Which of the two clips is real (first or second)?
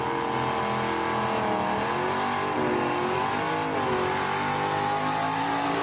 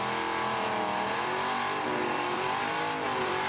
first